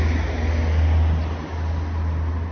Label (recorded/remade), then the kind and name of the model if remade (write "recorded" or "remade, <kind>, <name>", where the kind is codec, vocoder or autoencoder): recorded